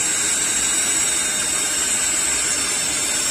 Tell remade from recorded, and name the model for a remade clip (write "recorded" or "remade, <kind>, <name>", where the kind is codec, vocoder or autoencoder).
recorded